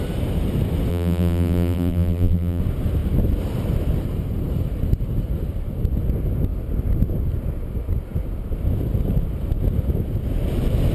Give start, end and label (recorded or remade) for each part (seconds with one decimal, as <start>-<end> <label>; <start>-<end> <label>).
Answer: 0.0-0.9 recorded; 0.9-2.6 remade; 2.6-10.9 recorded